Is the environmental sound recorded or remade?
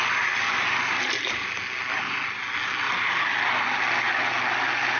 recorded